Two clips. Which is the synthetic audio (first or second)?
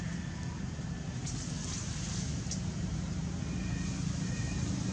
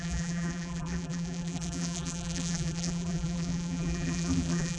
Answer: second